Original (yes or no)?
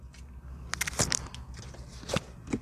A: yes